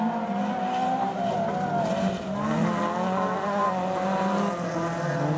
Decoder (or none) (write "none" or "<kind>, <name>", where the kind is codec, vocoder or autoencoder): none